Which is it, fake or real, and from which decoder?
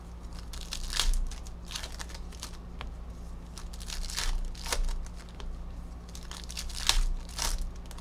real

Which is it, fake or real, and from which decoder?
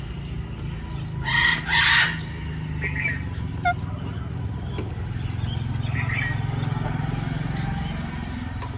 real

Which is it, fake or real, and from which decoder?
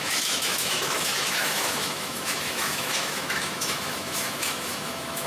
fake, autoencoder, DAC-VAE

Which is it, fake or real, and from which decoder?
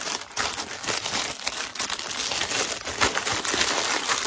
real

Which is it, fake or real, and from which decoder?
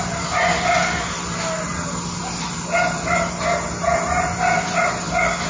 real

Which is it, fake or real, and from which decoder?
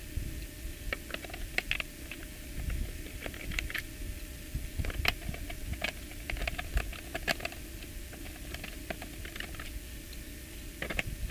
real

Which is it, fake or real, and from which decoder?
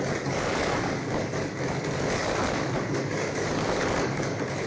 fake, codec, DAC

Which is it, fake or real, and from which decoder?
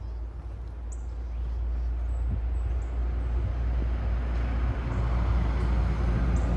real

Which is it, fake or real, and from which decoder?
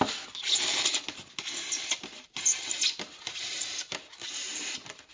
real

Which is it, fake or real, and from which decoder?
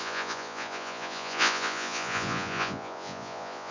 fake, vocoder, Vocos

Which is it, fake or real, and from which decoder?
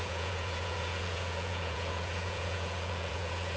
fake, vocoder, Vocos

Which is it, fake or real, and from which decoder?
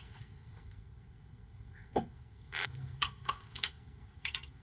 fake, codec, SNAC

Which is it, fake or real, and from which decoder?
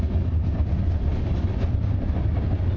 real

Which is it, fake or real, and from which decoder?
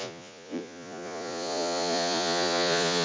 fake, vocoder, Vocos